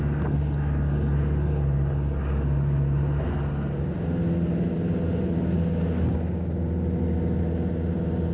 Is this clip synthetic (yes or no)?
no